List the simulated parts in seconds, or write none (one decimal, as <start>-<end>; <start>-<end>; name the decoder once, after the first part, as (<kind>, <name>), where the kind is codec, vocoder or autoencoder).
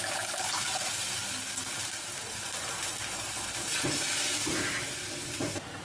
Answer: 0.0-1.2 (vocoder, BigVGAN v2); 1.8-5.8